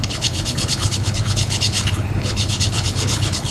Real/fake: fake